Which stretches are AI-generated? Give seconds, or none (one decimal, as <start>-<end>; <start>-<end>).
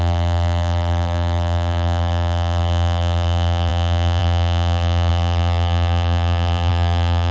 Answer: 0.0-7.3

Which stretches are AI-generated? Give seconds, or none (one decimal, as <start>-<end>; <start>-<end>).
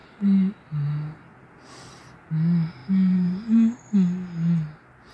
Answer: 0.0-0.5; 2.8-3.9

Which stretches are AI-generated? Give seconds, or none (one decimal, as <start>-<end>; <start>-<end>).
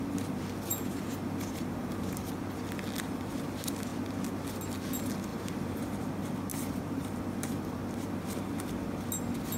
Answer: 0.7-2.3; 5.3-6.1; 6.5-7.2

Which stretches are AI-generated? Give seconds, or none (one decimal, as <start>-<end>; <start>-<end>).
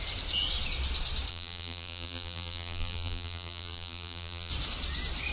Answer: 1.3-4.5